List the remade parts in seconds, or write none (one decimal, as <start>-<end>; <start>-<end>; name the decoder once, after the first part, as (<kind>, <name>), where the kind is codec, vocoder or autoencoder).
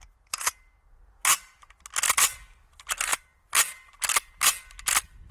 1.3-1.8 (vocoder, BigVGAN v2); 3.1-3.9